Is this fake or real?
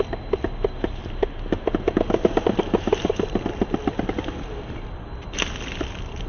real